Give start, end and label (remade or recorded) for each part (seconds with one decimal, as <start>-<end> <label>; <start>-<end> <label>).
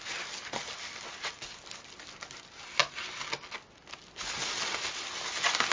0.0-5.7 recorded